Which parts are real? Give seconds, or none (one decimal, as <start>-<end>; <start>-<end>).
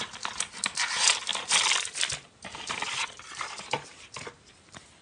0.0-1.3; 4.3-5.0